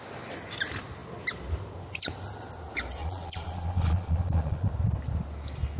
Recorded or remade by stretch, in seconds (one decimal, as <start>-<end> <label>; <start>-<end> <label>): 0.0-3.0 recorded; 3.0-4.7 remade; 4.7-5.8 recorded